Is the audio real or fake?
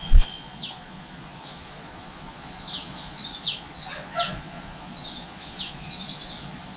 fake